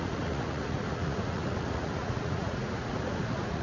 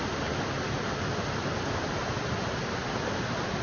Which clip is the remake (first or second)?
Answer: first